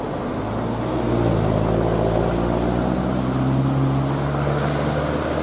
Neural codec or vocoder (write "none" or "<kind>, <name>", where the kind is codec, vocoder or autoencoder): none